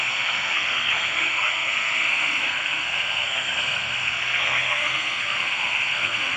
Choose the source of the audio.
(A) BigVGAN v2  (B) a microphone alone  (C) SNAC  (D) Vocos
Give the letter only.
C